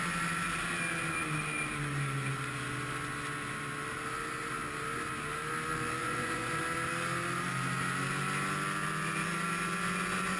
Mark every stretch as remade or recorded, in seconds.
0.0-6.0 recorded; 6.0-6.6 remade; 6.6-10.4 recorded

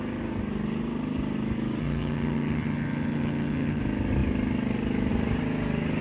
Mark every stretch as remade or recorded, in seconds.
0.0-1.8 recorded; 1.8-3.8 remade; 3.8-6.0 recorded

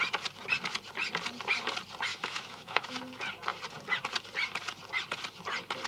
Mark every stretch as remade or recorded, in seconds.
0.0-2.1 recorded; 2.1-3.0 remade; 3.0-5.9 recorded

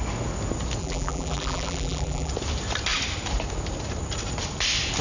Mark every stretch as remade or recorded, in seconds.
0.0-0.8 recorded; 0.8-2.3 remade; 2.3-5.0 recorded

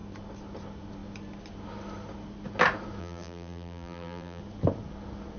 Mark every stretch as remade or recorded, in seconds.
0.0-3.0 recorded; 3.0-4.4 remade; 4.4-5.4 recorded